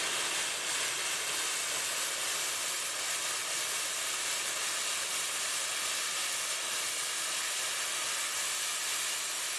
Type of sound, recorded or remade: remade